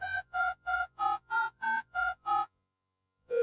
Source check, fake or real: fake